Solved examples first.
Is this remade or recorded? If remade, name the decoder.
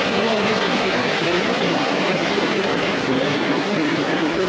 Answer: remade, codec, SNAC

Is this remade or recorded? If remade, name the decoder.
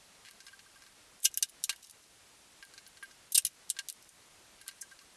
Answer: recorded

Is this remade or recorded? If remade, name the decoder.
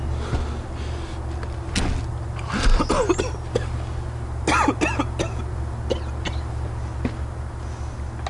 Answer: recorded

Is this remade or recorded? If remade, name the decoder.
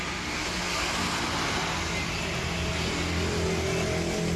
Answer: recorded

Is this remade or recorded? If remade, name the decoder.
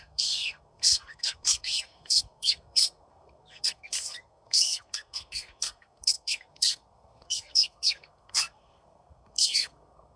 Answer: remade, codec, SNAC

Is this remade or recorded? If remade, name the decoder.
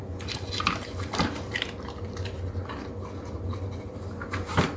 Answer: recorded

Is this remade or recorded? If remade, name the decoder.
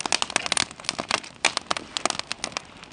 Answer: recorded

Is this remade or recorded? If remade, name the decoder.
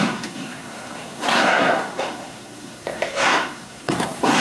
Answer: remade, codec, SNAC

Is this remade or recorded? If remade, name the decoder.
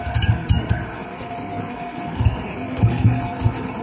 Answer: remade, codec, SNAC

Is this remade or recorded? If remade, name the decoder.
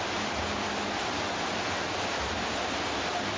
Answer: recorded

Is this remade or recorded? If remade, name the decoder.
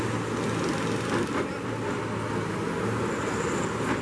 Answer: recorded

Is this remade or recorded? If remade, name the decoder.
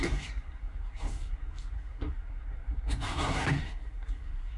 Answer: remade, codec, SNAC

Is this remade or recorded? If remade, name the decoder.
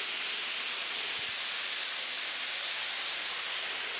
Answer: recorded